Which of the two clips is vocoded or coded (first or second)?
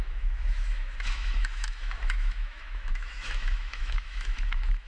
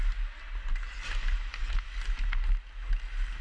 first